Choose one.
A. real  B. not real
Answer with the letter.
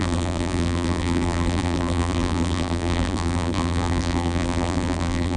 B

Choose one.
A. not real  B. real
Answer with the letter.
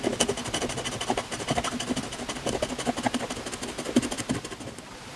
B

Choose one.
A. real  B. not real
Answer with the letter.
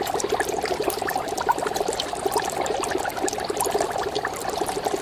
B